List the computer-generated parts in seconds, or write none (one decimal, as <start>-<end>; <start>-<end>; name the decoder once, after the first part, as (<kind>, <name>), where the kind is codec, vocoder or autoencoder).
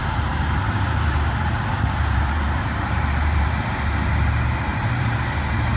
0.0-3.5 (vocoder, BigVGAN v2); 4.7-5.2